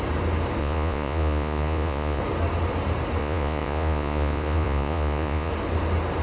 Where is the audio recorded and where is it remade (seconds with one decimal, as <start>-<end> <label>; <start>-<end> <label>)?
0.0-0.6 recorded; 0.6-2.2 remade; 2.2-3.2 recorded; 3.2-5.5 remade; 5.5-6.2 recorded